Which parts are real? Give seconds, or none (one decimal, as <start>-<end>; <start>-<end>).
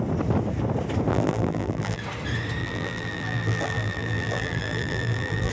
0.0-1.1; 2.0-2.6